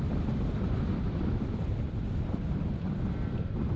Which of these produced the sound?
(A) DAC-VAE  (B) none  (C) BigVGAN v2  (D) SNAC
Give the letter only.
C